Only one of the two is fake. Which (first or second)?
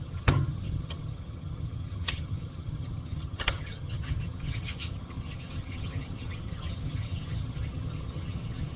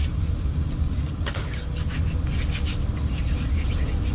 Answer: first